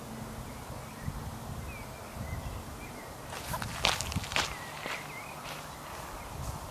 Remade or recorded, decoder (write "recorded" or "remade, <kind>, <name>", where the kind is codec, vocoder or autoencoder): recorded